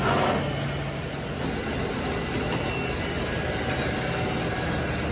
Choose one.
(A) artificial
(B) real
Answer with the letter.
B